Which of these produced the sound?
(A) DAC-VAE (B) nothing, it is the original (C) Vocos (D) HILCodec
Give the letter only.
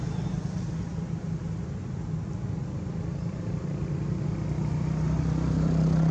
B